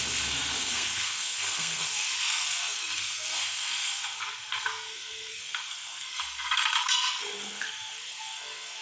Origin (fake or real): fake